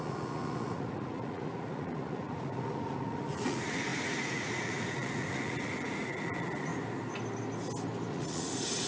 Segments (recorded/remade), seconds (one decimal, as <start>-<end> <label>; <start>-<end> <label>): 0.0-6.7 remade; 6.7-8.1 recorded; 8.1-8.9 remade